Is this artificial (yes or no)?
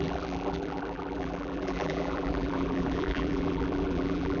yes